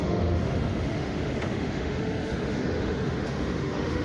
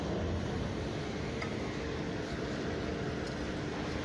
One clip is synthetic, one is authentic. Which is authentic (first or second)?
second